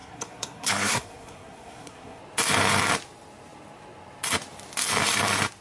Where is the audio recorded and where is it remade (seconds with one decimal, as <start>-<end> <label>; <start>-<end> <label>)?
0.0-2.2 remade; 2.2-5.6 recorded